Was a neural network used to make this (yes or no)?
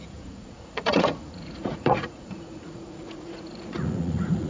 yes